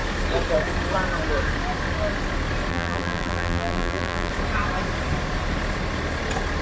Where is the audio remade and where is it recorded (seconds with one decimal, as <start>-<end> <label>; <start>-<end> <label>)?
0.0-2.7 recorded; 2.7-4.3 remade; 4.3-6.6 recorded